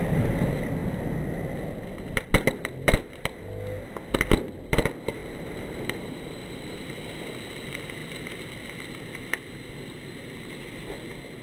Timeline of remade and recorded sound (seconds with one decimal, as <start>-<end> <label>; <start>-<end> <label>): 0.0-5.2 recorded; 5.2-7.0 remade; 7.0-11.4 recorded